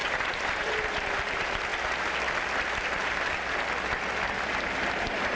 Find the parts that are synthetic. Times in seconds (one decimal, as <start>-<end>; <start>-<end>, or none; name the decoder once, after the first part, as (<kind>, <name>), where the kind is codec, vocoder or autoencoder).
0.0-1.7 (vocoder, BigVGAN v2); 4.9-5.4